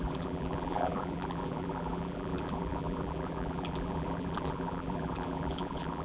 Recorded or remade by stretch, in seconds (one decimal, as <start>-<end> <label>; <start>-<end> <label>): 0.0-6.0 remade